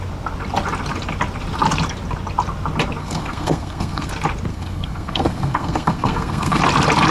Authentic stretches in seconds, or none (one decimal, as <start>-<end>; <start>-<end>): 0.0-3.0; 4.1-4.5; 6.6-7.1